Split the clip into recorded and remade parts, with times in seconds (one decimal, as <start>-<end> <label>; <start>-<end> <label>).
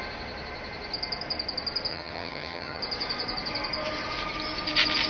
0.0-1.9 recorded; 1.9-2.8 remade; 2.8-5.1 recorded